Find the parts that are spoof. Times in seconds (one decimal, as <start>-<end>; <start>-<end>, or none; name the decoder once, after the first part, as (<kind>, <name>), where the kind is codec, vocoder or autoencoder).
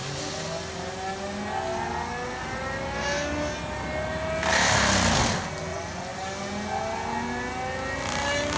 5.7-6.2 (vocoder, Vocos)